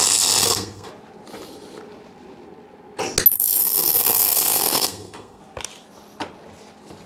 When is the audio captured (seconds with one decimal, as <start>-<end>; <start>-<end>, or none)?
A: 0.0-0.4; 0.9-3.6; 5.4-7.1